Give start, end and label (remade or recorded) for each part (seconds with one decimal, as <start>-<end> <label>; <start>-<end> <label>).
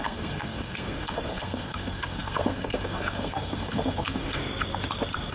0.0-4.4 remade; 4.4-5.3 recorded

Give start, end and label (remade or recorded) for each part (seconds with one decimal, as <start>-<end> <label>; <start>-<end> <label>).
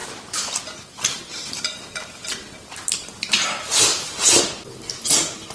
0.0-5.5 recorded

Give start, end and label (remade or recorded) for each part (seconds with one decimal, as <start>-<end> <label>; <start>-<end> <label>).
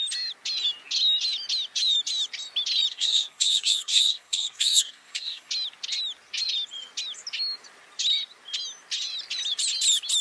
0.0-2.9 recorded; 2.9-5.5 remade; 5.5-10.2 recorded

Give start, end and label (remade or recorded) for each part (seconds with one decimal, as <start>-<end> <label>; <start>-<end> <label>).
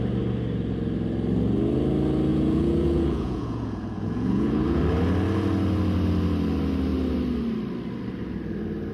0.0-2.3 recorded; 2.3-4.8 remade; 4.8-8.9 recorded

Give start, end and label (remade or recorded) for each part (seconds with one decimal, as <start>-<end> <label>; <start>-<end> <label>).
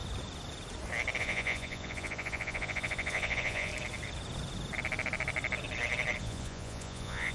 0.0-1.2 recorded; 1.2-3.7 remade; 3.7-6.2 recorded; 6.2-7.3 remade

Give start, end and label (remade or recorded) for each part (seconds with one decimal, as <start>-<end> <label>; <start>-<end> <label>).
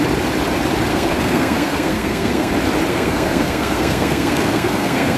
0.0-0.9 recorded; 0.9-2.5 remade; 2.5-2.9 recorded; 2.9-5.2 remade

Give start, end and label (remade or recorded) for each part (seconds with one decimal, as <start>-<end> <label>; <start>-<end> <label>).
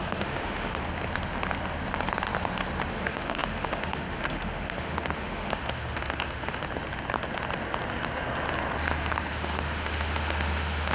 0.0-0.8 remade; 0.8-2.9 recorded; 2.9-6.6 remade; 6.6-9.3 recorded; 9.3-10.9 remade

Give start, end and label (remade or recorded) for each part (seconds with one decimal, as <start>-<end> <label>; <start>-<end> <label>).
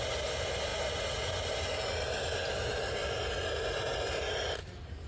0.0-5.1 recorded